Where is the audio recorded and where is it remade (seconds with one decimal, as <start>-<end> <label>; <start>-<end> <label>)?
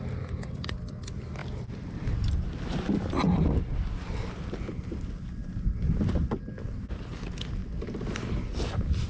0.0-9.1 recorded